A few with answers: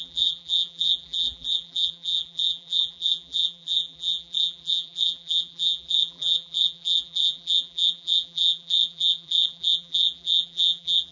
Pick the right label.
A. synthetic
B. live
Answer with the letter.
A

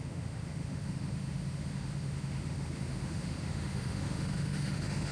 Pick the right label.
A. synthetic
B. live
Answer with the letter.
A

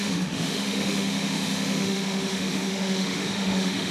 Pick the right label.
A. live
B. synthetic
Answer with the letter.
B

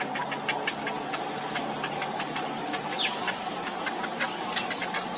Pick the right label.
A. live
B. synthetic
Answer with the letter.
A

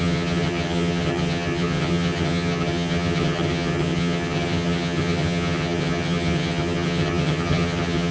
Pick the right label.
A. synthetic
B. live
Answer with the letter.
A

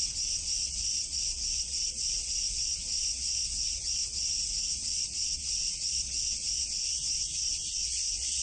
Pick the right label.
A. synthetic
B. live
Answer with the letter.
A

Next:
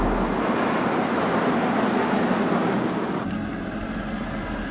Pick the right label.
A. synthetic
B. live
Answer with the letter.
B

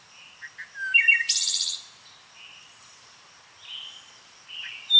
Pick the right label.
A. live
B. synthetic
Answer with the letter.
A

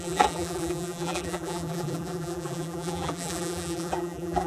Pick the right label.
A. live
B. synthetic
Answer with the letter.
B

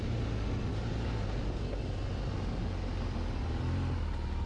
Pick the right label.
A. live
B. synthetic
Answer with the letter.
A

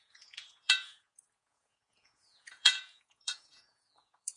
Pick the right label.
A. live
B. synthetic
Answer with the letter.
B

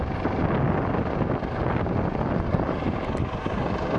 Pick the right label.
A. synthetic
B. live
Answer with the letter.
B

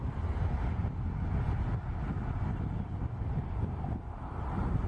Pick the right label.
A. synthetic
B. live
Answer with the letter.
B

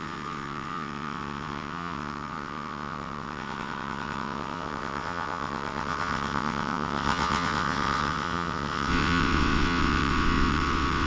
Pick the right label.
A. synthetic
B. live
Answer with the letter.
A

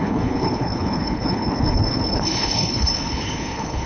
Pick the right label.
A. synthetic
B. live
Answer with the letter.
A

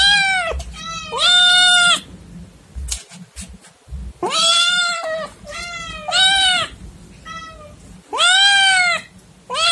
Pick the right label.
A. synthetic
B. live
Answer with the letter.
B